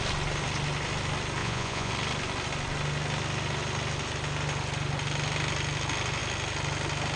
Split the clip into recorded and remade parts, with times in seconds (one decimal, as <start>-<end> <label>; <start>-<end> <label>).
0.0-1.4 recorded; 1.4-1.9 remade; 1.9-7.2 recorded